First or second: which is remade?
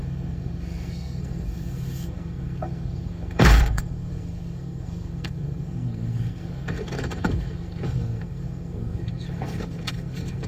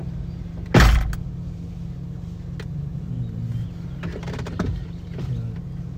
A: first